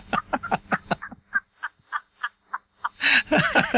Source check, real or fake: real